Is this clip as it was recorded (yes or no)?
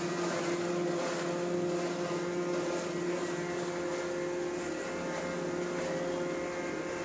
yes